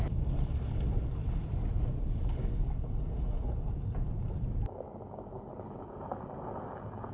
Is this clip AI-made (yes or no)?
no